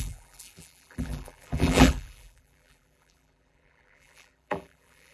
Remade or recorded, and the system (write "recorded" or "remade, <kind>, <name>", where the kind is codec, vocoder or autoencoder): remade, vocoder, BigVGAN v2